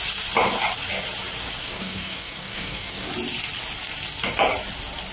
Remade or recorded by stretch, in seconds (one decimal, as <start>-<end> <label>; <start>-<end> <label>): 0.0-1.6 recorded; 1.6-3.1 remade; 3.1-5.1 recorded